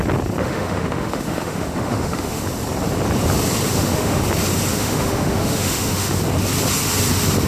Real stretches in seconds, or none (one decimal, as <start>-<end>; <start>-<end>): 0.0-0.4; 2.4-3.7; 4.2-4.7; 6.2-7.5